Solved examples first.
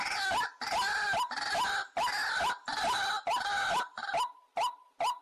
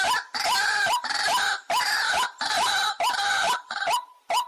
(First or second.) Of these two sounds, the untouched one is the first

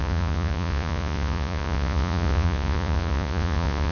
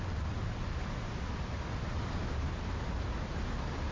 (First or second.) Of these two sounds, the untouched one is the second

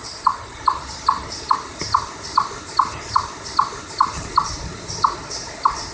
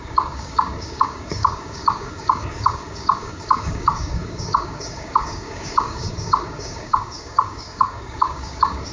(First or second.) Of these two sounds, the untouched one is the first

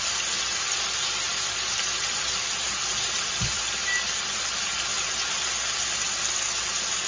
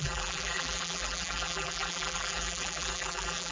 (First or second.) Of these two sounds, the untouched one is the first